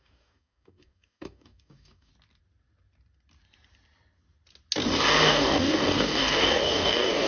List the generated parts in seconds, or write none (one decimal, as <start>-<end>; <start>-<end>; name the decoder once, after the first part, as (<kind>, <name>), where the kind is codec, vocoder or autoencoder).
0.0-2.1 (codec, DAC); 5.2-7.3